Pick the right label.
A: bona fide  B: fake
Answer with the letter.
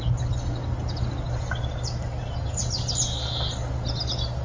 A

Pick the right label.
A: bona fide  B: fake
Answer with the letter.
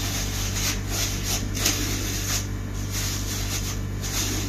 A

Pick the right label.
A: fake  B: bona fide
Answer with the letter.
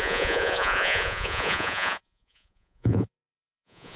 A